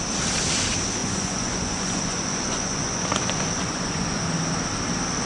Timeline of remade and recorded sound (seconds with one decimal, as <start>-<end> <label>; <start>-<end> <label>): 0.0-1.0 recorded; 1.0-4.2 remade; 4.2-5.3 recorded